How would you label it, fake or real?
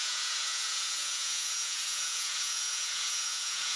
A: fake